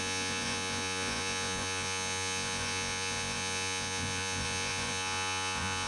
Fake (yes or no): yes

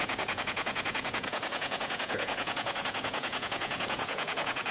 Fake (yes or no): yes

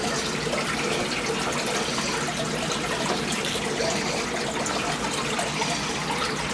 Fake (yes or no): no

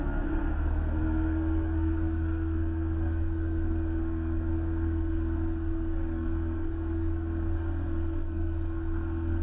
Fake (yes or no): yes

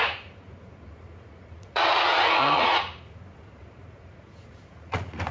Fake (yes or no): yes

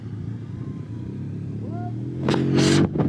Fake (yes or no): yes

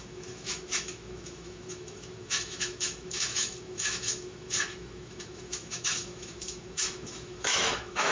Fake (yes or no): yes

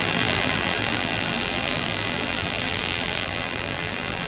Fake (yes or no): yes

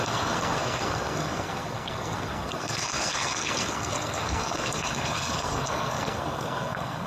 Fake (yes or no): yes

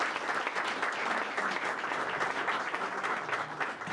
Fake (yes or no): no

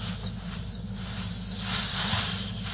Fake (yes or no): no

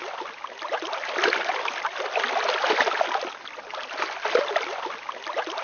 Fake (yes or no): no